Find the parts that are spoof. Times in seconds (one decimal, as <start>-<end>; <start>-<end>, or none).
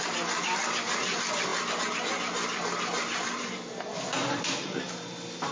none